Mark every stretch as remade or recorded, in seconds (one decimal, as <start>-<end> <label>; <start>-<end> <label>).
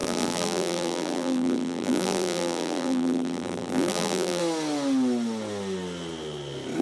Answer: 0.0-4.4 remade; 4.4-6.8 recorded